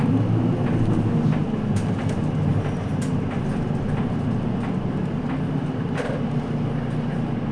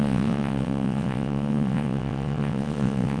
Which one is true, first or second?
first